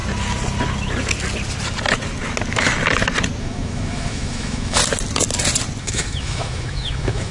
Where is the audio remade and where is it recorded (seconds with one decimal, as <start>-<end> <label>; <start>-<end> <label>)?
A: 0.0-3.4 recorded; 3.4-4.8 remade; 4.8-5.8 recorded; 5.8-7.3 remade